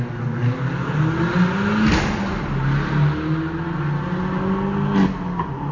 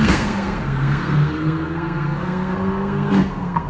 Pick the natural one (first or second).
first